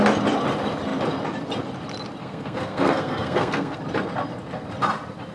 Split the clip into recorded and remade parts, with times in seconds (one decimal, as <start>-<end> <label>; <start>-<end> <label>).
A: 0.0-2.2 recorded; 2.2-3.8 remade; 3.8-5.3 recorded